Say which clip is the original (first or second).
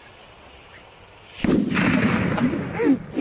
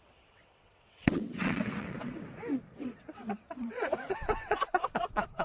first